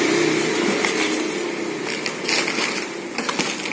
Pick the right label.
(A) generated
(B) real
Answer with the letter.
B